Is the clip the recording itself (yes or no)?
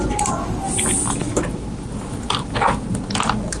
yes